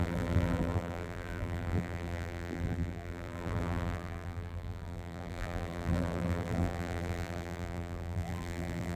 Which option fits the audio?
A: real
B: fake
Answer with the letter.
B